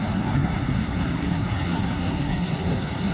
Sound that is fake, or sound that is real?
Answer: fake